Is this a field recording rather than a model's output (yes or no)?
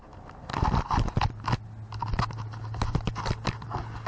yes